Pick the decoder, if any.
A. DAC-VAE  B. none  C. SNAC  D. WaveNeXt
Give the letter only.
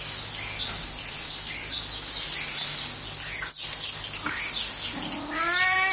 B